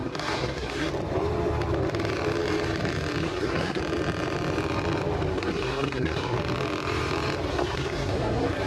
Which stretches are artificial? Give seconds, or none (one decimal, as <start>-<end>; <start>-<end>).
0.0-0.9; 3.2-3.8; 5.3-6.4; 7.5-8.7